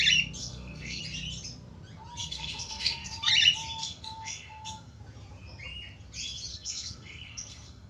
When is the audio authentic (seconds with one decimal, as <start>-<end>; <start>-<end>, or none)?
0.0-0.4; 1.0-2.2; 3.3-3.8; 5.0-6.5